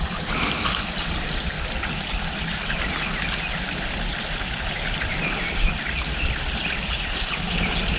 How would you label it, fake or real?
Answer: real